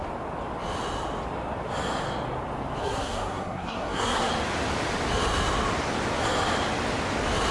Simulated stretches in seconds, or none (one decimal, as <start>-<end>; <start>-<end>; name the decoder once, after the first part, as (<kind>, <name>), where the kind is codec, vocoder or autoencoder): 2.8-4.3 (codec, SNAC)